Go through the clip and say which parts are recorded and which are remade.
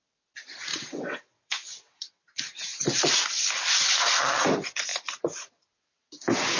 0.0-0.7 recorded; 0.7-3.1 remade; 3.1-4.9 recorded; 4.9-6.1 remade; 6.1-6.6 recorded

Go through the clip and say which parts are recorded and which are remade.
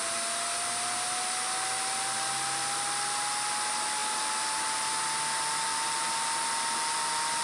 0.0-7.4 recorded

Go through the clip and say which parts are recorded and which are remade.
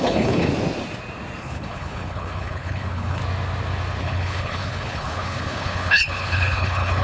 0.0-0.5 remade; 0.5-1.4 recorded; 1.4-3.2 remade; 3.2-4.0 recorded; 4.0-7.0 remade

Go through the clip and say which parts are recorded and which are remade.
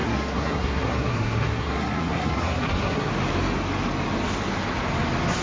0.0-3.1 remade; 3.1-5.4 recorded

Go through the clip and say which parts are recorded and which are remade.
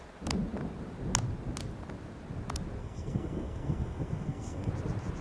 0.0-2.8 recorded; 2.8-4.7 remade; 4.7-5.2 recorded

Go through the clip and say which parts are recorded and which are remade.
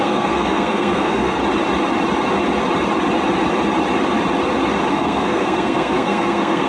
0.0-1.4 remade; 1.4-4.9 recorded; 4.9-6.7 remade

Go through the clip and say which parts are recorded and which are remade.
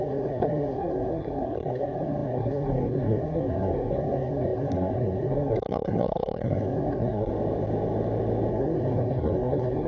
0.0-7.3 remade; 7.3-8.5 recorded; 8.5-9.9 remade